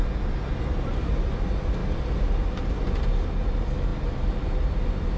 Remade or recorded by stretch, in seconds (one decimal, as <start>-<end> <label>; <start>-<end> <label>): 0.0-5.2 recorded